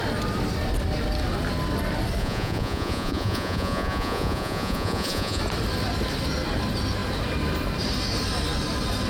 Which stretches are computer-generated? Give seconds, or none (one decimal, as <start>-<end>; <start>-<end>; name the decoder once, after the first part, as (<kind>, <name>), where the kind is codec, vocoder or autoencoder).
2.2-5.4 (vocoder, Vocos)